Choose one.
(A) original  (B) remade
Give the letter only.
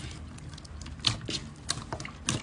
A